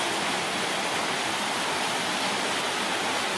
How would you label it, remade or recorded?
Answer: recorded